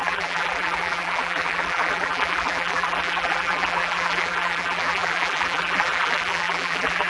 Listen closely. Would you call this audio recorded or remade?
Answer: remade